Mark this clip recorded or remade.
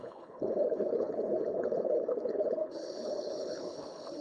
remade